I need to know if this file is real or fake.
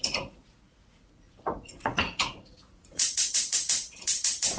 fake